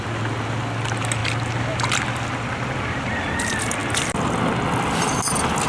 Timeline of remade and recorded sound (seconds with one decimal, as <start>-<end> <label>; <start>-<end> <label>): 0.0-5.7 recorded